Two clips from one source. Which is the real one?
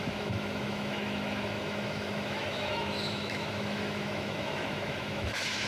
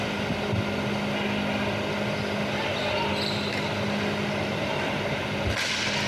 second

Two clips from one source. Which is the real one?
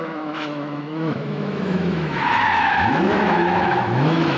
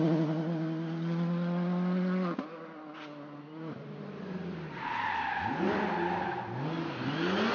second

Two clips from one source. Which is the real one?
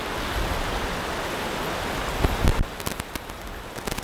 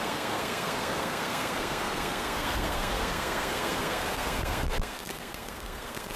first